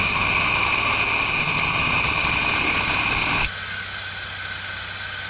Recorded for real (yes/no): yes